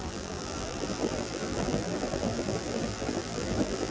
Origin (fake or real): fake